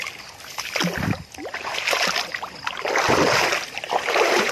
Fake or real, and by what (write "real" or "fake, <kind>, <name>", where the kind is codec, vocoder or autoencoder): real